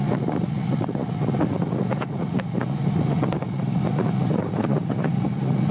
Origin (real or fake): fake